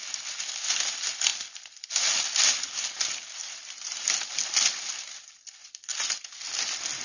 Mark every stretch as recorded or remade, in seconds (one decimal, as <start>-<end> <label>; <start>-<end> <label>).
0.0-3.4 recorded; 3.4-4.6 remade; 4.6-5.6 recorded; 5.6-6.1 remade; 6.1-7.0 recorded